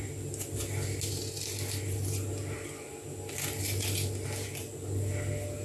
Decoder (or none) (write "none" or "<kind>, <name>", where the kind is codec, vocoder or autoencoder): none